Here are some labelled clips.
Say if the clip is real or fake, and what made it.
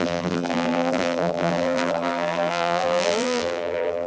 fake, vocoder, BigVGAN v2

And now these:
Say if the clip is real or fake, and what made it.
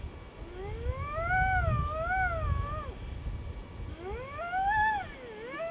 real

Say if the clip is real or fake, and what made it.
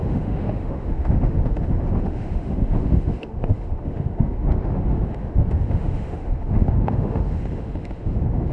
fake, autoencoder, DAC-VAE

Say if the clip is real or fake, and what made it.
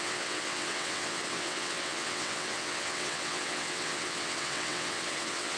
fake, vocoder, WaveNeXt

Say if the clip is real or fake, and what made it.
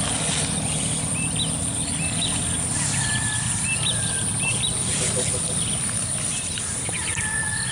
real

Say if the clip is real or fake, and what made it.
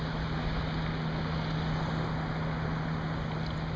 real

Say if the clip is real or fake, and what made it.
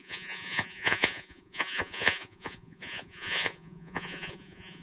fake, vocoder, Vocos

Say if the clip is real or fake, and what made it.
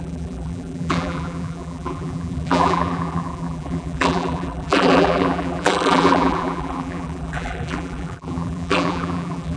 fake, vocoder, BigVGAN v2